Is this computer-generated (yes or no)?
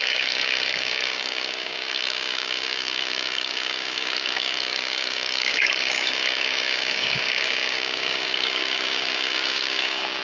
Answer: yes